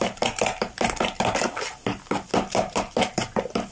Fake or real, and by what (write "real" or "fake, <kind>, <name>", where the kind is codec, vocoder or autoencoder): real